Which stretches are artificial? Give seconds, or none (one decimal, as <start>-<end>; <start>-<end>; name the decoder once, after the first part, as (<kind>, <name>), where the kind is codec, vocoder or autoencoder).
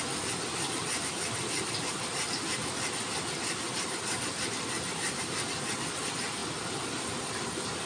none